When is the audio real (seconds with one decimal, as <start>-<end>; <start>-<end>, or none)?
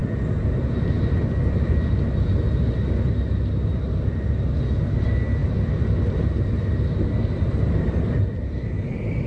0.0-9.3